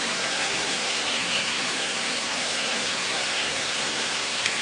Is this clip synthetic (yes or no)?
yes